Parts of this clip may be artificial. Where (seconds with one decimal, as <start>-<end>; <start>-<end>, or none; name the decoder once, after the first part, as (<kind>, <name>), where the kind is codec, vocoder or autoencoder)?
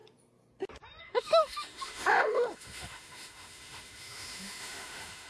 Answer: 1.0-5.3 (autoencoder, DAC-VAE)